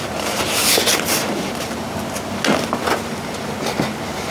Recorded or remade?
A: recorded